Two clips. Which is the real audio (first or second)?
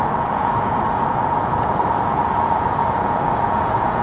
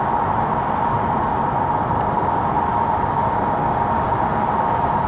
second